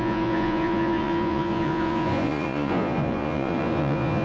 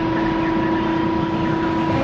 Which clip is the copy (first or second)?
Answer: first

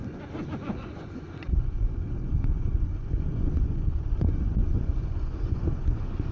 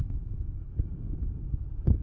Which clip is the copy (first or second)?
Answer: first